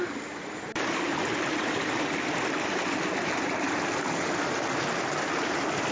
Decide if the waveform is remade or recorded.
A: recorded